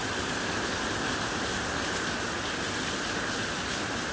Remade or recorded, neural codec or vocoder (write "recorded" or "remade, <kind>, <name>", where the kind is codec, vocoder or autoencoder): recorded